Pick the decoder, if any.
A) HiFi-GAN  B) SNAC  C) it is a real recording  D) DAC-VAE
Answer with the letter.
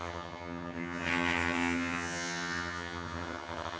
A